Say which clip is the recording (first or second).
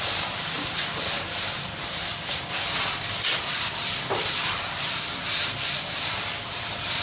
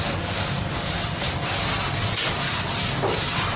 second